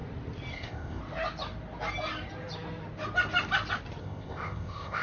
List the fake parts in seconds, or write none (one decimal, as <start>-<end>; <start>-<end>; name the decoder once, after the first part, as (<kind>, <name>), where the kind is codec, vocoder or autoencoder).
0.5-1.0 (codec, ZipCodec); 4.0-5.0